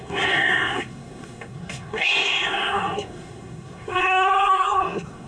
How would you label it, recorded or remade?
remade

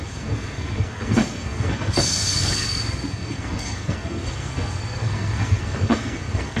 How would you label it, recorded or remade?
remade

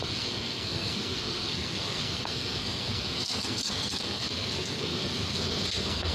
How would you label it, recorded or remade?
remade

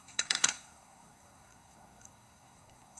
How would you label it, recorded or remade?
remade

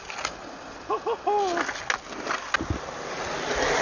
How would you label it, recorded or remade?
recorded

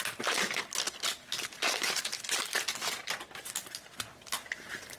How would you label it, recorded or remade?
recorded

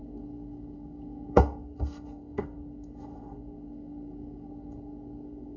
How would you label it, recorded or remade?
remade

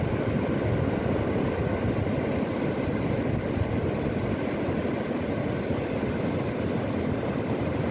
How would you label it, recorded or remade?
recorded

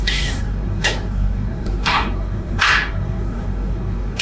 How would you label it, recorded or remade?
remade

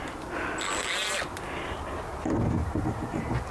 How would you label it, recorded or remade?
recorded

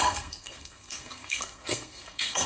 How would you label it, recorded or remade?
remade